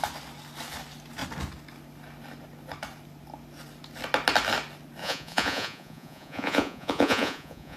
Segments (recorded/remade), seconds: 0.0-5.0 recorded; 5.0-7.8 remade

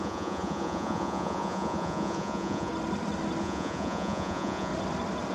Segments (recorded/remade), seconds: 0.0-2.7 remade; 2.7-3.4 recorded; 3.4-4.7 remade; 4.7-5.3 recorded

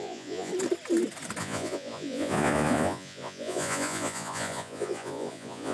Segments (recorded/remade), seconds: 0.0-0.5 remade; 0.5-1.4 recorded; 1.4-5.7 remade